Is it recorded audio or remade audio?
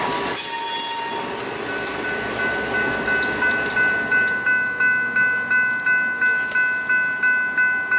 recorded